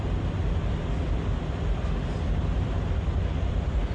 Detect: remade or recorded remade